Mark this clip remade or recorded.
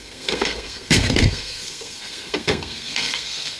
remade